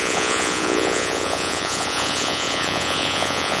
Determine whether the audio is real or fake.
fake